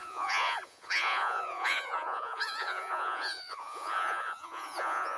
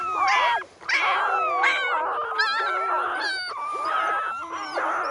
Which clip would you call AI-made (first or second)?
first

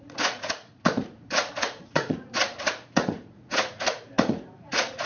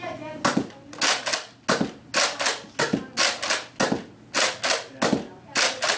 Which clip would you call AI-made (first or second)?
first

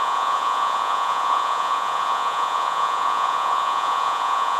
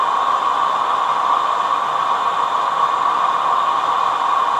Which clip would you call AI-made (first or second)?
first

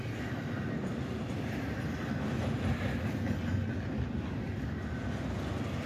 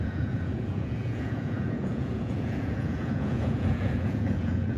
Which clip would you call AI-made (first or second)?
second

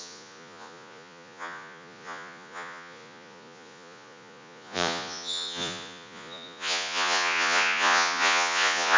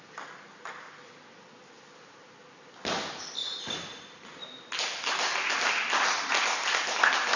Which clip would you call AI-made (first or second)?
first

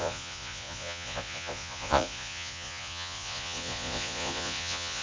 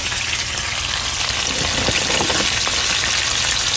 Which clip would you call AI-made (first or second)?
first